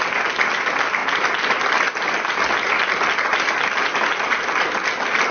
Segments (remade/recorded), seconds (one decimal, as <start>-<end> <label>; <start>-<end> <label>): 0.0-5.3 recorded